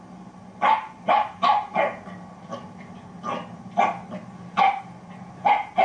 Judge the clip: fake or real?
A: real